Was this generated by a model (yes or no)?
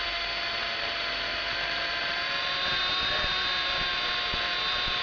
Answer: no